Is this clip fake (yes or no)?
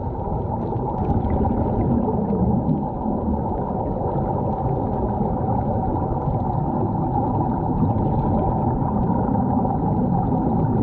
no